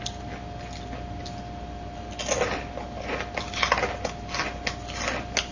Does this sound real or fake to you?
real